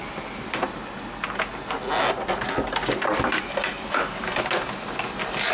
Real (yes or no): yes